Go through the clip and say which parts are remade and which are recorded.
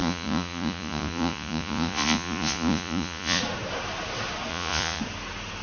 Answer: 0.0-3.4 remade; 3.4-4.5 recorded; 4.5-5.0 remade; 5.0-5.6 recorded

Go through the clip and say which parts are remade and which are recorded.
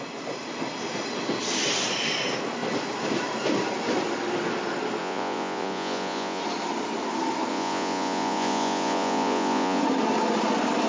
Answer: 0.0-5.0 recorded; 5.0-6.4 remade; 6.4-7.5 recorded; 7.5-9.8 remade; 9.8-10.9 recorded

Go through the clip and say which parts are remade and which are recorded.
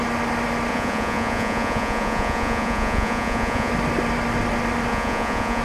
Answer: 0.0-0.7 recorded; 0.7-3.7 remade; 3.7-4.9 recorded; 4.9-5.6 remade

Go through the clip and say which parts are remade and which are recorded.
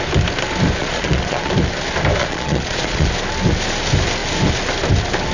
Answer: 0.0-0.8 recorded; 0.8-1.5 remade; 1.5-2.2 recorded; 2.2-3.1 remade; 3.1-5.3 recorded